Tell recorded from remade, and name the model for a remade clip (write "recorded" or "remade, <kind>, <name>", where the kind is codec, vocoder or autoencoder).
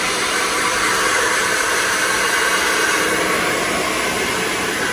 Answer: recorded